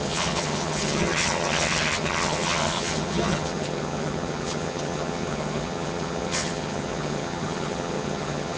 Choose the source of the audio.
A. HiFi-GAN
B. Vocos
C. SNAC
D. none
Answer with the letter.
A